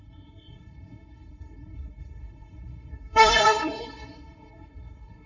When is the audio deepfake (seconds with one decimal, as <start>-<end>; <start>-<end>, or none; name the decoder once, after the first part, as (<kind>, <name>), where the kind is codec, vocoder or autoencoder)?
0.0-5.3 (codec, SNAC)